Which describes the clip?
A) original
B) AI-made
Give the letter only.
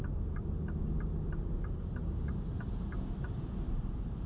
A